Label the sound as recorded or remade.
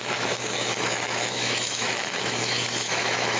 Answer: remade